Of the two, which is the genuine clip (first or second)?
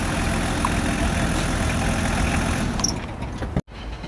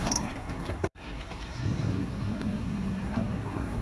first